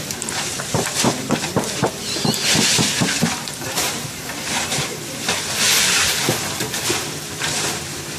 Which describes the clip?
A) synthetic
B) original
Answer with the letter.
A